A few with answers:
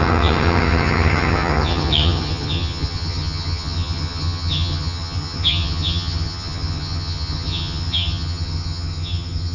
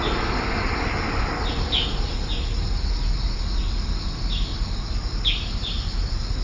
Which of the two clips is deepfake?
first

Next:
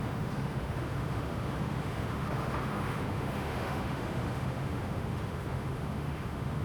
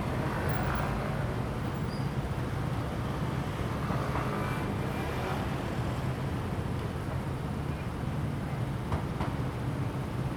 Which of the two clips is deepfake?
first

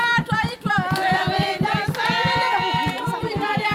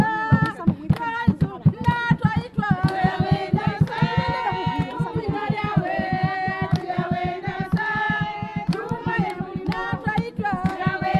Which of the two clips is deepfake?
first